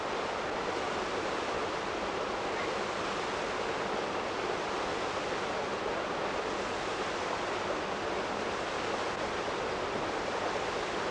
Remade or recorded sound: recorded